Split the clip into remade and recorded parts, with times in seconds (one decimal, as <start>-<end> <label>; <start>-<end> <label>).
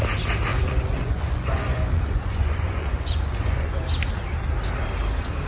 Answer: 0.0-0.5 recorded; 0.5-3.7 remade; 3.7-5.5 recorded